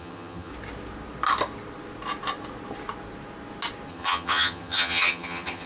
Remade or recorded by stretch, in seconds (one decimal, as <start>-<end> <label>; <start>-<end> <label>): 0.0-0.5 remade; 0.5-3.9 recorded; 3.9-5.7 remade